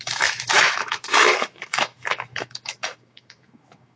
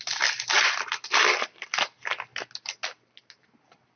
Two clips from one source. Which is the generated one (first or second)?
first